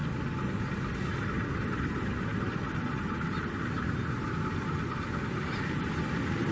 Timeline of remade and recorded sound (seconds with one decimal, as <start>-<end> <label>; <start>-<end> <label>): 0.0-6.5 recorded